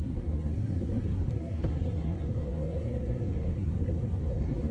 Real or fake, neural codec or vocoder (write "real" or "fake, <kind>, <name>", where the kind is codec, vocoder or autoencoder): fake, codec, SNAC